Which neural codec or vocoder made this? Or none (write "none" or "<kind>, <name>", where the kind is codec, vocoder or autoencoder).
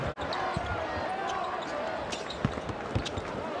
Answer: none